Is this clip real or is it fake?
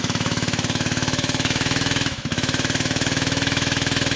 fake